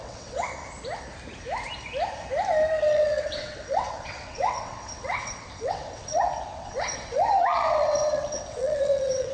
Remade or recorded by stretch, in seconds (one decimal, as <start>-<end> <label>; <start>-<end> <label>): 0.0-0.6 remade; 0.6-2.8 recorded; 2.8-9.3 remade